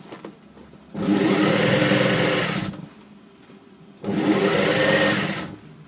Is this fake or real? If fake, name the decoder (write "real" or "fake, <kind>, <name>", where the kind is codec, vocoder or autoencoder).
real